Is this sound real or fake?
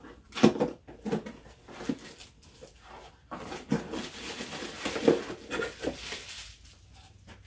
real